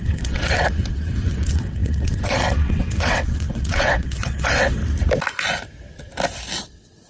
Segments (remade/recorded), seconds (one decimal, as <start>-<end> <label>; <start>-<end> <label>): 0.0-4.8 remade; 4.8-6.6 recorded; 6.6-7.1 remade